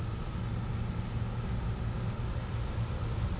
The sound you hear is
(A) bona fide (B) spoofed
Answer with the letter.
A